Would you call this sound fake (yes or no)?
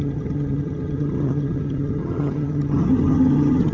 yes